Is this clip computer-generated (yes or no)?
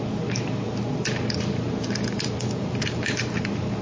yes